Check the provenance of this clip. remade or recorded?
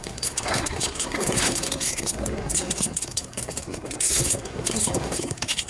remade